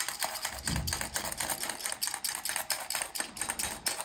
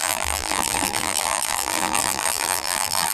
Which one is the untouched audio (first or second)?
first